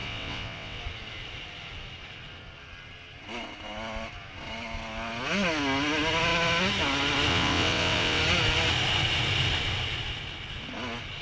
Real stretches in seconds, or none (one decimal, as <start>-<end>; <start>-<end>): 0.8-7.3; 8.2-11.2